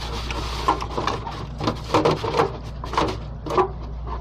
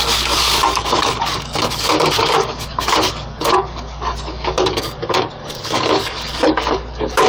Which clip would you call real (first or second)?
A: first